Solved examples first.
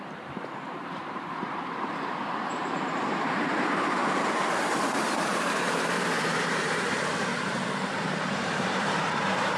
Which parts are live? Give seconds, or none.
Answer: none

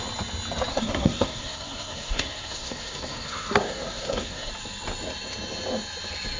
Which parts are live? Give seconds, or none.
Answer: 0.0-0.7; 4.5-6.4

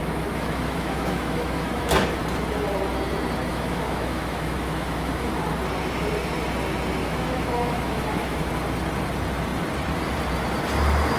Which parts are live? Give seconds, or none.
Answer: 1.9-3.5; 5.4-7.0; 8.5-11.2

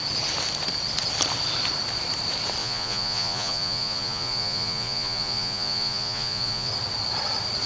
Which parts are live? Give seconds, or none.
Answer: 0.0-2.6; 6.7-7.7

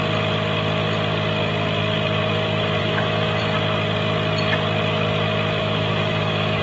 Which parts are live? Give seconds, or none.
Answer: 0.0-2.8; 3.4-5.6

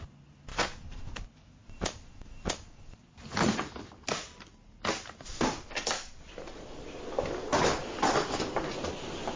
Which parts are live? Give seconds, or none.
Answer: 0.0-1.6; 6.4-9.4

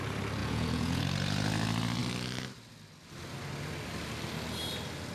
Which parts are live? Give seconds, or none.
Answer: 0.0-0.4; 1.0-5.1

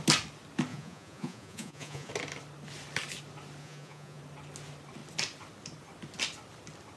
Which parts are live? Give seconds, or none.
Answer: 0.0-0.7; 2.1-3.6; 4.2-7.0